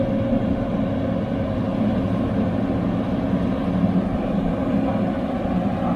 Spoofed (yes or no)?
no